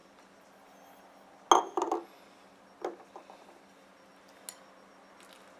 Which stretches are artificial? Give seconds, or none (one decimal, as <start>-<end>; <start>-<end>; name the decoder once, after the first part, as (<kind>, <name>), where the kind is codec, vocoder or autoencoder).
none